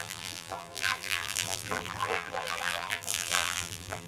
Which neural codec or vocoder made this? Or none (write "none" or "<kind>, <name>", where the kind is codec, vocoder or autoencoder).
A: vocoder, BigVGAN v2